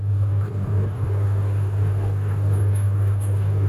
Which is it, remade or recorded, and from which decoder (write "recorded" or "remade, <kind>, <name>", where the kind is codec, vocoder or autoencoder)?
remade, codec, DAC